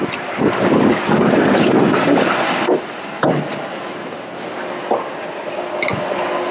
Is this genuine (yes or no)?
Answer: yes